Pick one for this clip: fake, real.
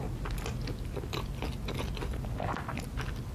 real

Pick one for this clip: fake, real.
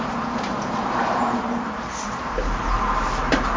fake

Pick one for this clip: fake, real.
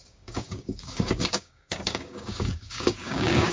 fake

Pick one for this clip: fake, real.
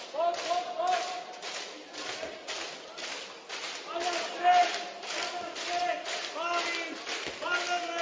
real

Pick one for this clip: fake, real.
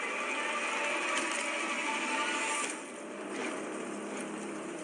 real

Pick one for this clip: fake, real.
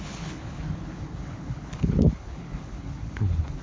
fake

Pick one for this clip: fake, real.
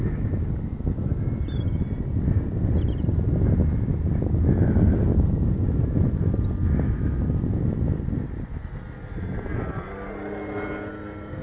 real